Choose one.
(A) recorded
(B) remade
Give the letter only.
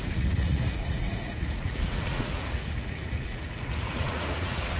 B